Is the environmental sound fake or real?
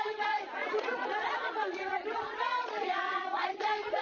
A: fake